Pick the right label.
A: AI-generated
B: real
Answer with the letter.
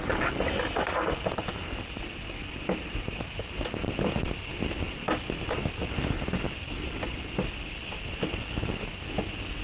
B